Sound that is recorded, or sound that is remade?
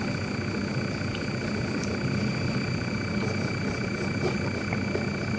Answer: recorded